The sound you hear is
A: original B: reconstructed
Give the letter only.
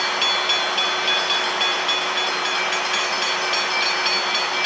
A